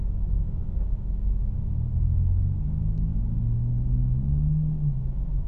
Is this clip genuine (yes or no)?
no